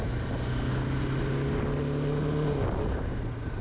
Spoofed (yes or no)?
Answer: no